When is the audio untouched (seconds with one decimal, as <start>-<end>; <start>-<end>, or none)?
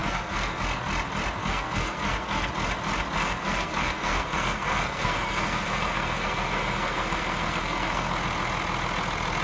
0.6-1.4; 2.5-3.2; 8.1-9.4